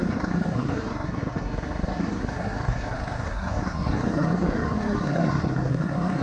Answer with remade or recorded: remade